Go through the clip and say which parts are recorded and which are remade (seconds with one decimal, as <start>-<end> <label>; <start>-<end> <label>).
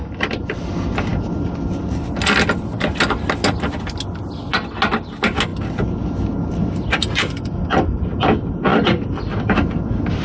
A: 0.0-10.2 recorded